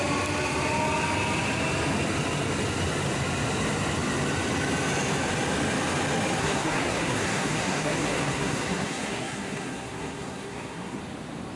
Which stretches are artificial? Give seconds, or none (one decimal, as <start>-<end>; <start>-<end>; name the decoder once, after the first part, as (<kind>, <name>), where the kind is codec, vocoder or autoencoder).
6.4-11.0 (codec, SNAC)